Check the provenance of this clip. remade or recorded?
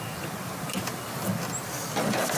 recorded